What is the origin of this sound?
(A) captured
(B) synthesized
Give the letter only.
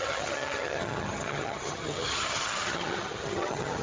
B